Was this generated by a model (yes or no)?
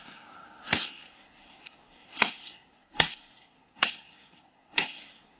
yes